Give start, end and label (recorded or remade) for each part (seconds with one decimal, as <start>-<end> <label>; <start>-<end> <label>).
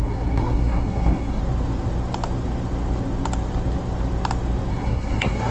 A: 0.0-1.4 remade; 1.4-4.7 recorded; 4.7-5.5 remade